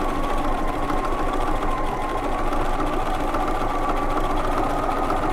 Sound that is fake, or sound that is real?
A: real